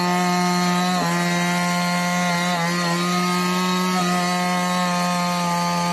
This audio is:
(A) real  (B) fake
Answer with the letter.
A